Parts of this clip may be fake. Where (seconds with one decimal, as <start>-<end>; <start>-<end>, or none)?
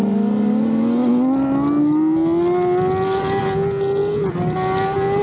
none